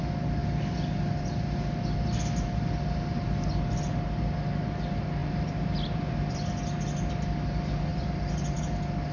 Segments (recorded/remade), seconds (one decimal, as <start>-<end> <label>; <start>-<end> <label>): 0.0-5.2 recorded; 5.2-6.5 remade; 6.5-7.9 recorded; 7.9-8.6 remade; 8.6-9.1 recorded